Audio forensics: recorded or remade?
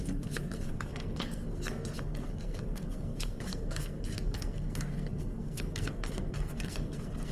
remade